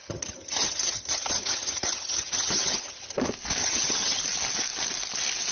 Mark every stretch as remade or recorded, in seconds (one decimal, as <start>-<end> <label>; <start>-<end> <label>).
0.0-3.2 remade; 3.2-3.6 recorded; 3.6-4.2 remade; 4.2-5.5 recorded